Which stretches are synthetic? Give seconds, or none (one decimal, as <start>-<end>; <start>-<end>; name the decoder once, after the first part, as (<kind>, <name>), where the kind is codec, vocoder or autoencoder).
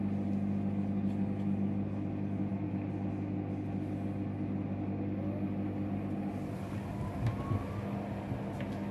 none